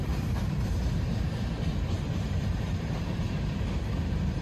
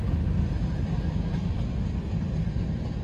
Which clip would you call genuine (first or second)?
second